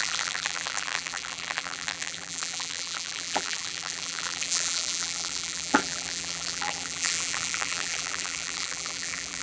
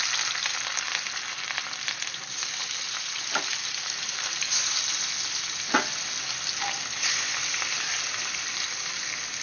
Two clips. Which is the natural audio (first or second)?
second